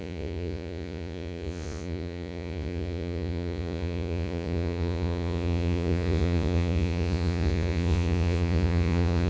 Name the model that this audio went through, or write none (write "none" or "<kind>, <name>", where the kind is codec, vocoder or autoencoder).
vocoder, Vocos